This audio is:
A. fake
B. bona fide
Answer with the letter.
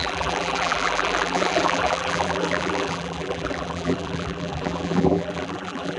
A